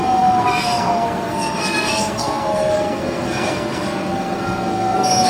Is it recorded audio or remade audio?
remade